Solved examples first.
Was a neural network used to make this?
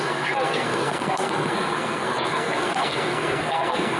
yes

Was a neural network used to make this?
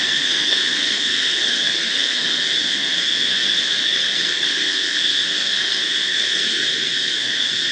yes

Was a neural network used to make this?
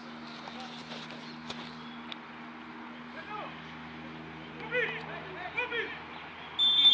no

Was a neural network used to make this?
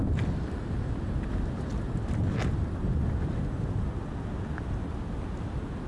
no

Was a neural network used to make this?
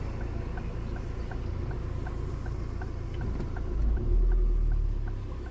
no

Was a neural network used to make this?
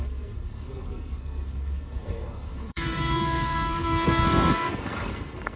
yes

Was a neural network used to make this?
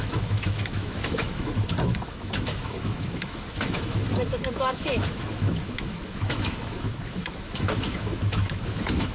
yes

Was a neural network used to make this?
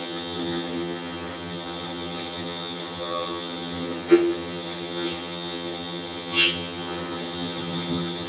yes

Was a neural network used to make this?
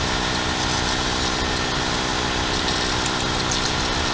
no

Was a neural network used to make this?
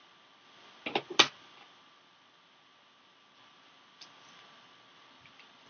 no